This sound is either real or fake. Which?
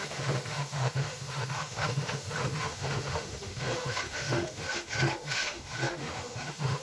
fake